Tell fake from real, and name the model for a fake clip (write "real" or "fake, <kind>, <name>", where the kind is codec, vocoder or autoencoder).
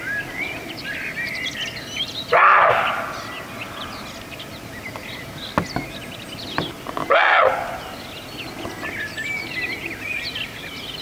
real